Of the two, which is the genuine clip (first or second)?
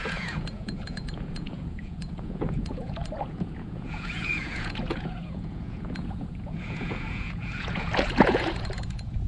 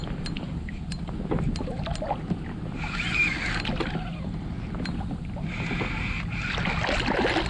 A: second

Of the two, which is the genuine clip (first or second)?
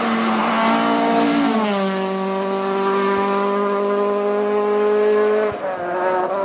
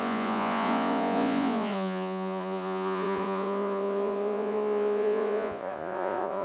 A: first